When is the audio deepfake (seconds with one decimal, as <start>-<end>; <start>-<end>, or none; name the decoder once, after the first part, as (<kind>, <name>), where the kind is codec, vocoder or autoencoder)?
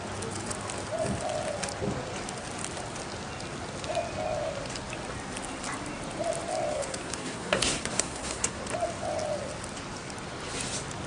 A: 6.7-8.6 (codec, SNAC)